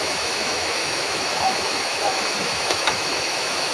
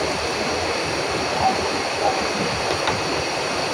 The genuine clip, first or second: second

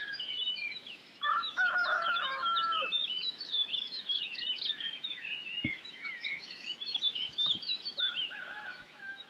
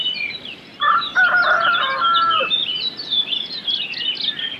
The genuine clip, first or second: second